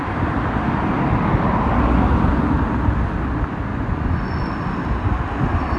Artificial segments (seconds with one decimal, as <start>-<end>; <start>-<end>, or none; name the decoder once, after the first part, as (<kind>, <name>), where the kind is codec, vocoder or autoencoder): 3.7-4.5 (vocoder, Vocos)